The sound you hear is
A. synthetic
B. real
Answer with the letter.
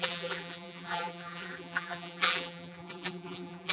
A